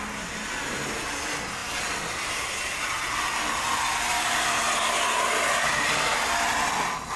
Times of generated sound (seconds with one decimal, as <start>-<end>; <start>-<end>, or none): none